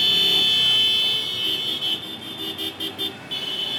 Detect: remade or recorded recorded